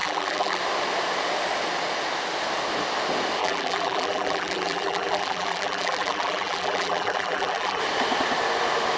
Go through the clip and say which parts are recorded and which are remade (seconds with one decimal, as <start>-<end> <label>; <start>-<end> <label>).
0.0-0.6 remade; 0.6-3.4 recorded; 3.4-7.8 remade; 7.8-9.0 recorded